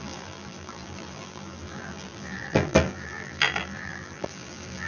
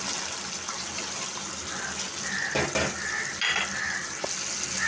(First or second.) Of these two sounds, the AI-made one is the first